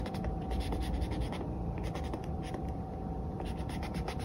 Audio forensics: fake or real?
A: fake